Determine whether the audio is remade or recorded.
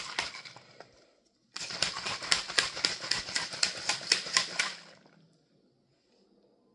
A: recorded